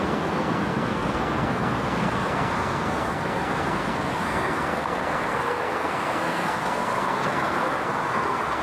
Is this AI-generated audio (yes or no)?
yes